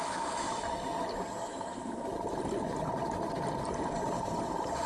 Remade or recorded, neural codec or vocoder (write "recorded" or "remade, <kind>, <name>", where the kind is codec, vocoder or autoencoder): recorded